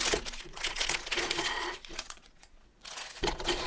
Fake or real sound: fake